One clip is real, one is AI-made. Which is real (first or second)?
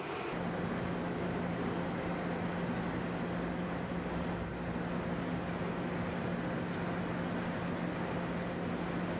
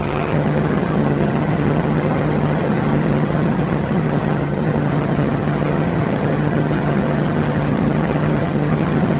first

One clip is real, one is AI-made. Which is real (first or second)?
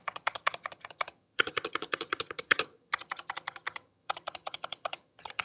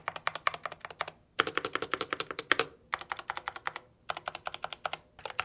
second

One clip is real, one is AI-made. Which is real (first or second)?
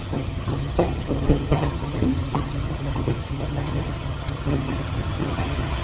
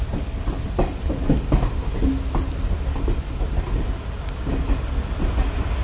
second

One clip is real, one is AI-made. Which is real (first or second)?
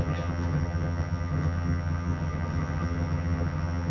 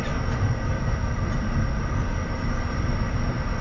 second